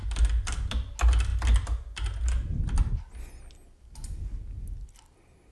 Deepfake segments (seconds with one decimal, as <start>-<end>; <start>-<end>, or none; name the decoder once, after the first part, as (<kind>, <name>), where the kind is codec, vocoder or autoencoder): none